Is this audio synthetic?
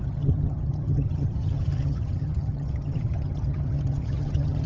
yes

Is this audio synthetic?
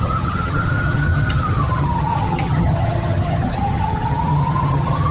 yes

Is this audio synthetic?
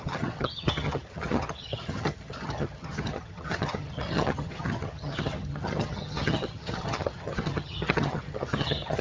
yes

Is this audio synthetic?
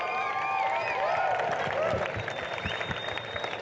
no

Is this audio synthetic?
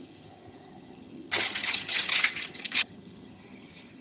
yes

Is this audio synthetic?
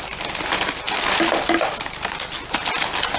no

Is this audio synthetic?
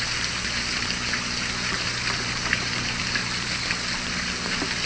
no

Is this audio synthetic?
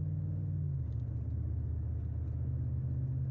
no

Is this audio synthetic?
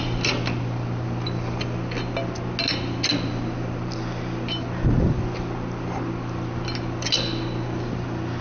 no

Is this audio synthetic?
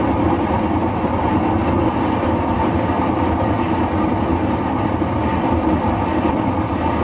no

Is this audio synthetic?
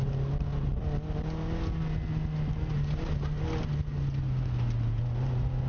no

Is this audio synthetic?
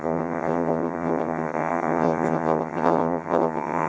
yes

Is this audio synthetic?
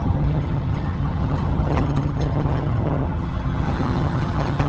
yes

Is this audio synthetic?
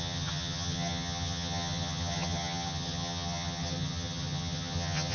yes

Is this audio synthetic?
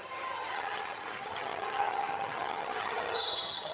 yes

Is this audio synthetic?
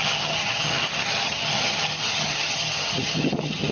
yes